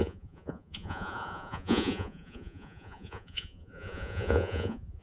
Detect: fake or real fake